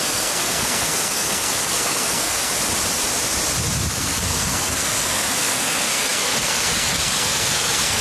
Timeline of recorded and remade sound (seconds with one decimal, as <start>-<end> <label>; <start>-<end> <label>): 0.0-2.5 remade; 2.5-3.9 recorded; 3.9-8.0 remade